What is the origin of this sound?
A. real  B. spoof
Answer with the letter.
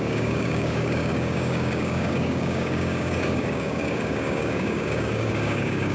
B